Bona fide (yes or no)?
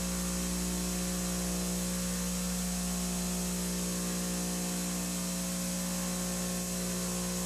yes